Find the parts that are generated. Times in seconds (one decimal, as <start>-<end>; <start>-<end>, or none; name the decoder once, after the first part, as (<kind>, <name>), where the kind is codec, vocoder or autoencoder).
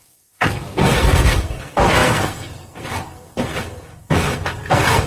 0.0-5.1 (codec, SNAC)